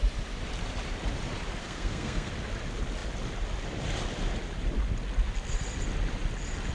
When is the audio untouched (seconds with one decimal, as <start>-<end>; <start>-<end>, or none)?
0.0-1.6; 2.3-6.7

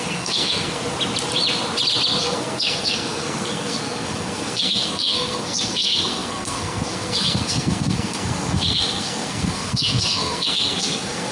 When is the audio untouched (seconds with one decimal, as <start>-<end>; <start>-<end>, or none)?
0.8-2.2